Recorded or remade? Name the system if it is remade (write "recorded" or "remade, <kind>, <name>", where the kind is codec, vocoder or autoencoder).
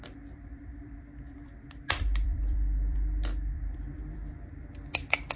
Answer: remade, vocoder, BigVGAN v2